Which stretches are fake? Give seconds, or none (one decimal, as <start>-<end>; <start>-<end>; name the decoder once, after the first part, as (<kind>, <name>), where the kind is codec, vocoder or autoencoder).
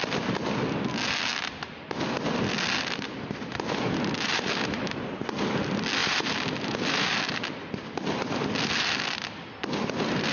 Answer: none